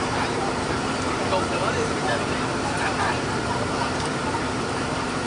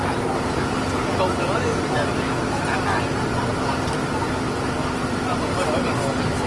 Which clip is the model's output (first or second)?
first